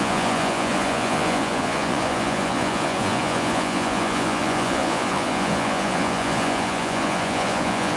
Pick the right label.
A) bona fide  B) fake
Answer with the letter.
B